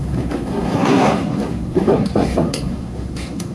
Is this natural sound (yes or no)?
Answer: no